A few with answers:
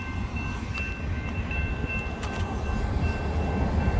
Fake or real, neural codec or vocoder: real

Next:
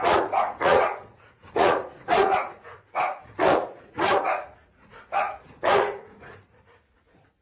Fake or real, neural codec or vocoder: fake, vocoder, Vocos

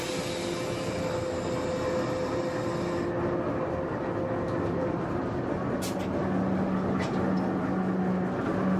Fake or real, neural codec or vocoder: real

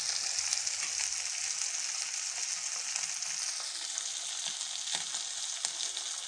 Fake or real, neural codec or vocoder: real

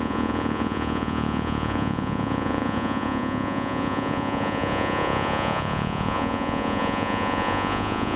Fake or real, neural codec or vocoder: fake, vocoder, Vocos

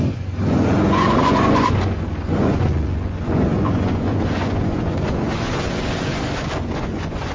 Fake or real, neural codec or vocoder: fake, vocoder, Vocos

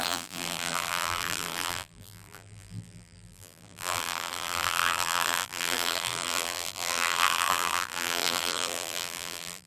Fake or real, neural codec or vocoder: fake, vocoder, BigVGAN v2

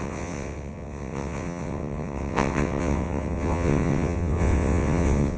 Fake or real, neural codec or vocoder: fake, vocoder, WaveNeXt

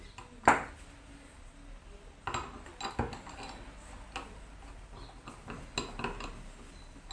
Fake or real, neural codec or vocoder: real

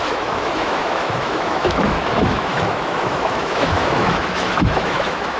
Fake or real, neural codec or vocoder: fake, autoencoder, DAC-VAE